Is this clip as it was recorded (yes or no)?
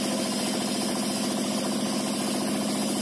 yes